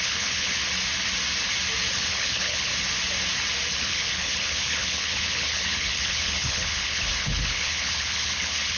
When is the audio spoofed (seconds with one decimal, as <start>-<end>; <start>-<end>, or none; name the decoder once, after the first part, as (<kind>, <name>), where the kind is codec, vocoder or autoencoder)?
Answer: 0.0-0.6 (codec, HILCodec); 1.9-2.7; 3.8-8.8